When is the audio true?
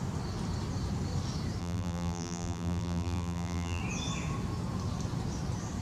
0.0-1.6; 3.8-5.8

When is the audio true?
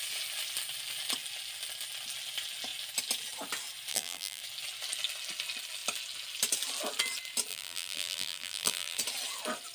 0.0-3.9; 4.4-7.5; 9.0-9.7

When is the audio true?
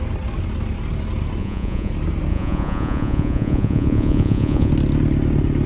0.0-1.4; 1.9-2.3; 4.7-5.7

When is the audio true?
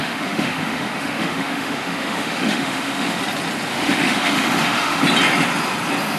3.2-3.7; 5.0-6.2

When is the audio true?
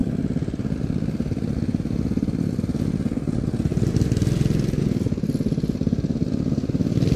2.6-7.2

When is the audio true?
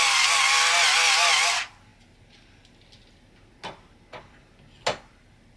0.0-5.6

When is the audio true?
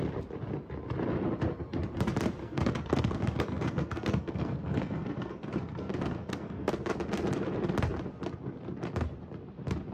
0.0-2.4; 6.7-9.9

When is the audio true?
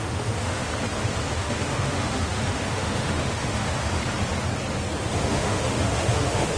0.7-1.3; 4.0-5.2